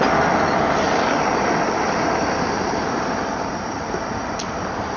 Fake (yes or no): yes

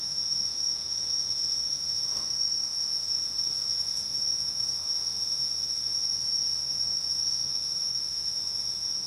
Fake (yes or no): yes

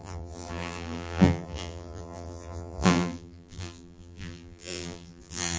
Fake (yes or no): yes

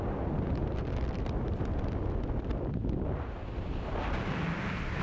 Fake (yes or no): no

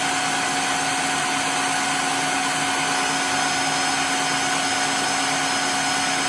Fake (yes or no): no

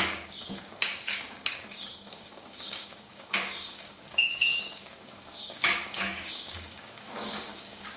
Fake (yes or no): yes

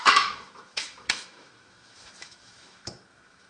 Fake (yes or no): yes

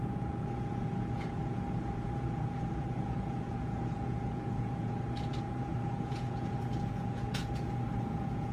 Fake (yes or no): yes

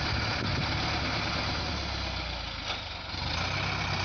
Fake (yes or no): no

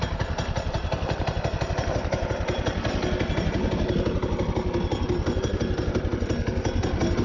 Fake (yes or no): no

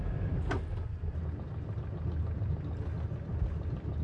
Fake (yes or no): no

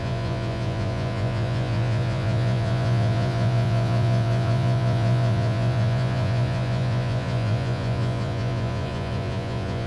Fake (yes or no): yes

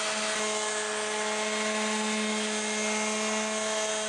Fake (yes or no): no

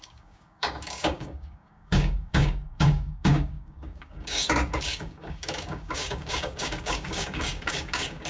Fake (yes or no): yes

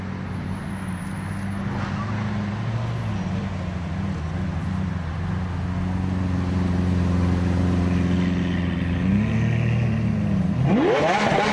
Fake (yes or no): no